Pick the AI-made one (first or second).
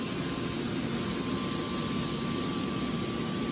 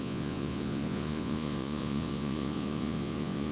second